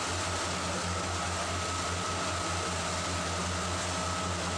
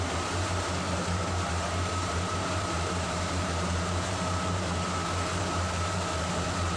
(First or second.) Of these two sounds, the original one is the first